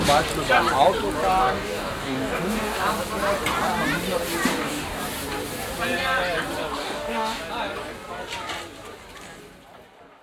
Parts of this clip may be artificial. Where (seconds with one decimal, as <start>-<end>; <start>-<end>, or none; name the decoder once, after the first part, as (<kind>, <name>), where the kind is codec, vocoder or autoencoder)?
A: 1.4-2.8 (codec, DAC); 4.5-5.0; 6.8-7.4